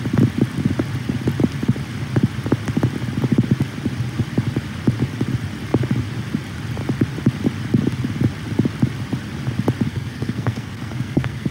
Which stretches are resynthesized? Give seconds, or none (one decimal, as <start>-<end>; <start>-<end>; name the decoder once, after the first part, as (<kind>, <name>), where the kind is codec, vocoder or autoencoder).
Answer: 9.9-11.5 (codec, SNAC)